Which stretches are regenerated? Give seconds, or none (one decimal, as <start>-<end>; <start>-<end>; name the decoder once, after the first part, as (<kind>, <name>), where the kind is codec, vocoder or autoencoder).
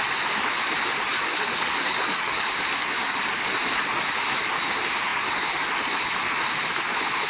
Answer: 1.1-2.5 (codec, DAC)